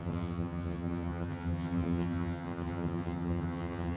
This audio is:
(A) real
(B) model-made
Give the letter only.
B